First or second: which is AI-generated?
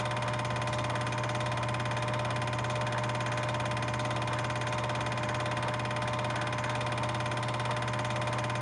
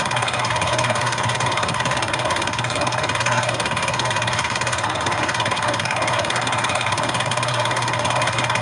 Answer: second